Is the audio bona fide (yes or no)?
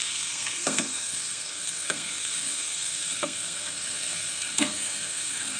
no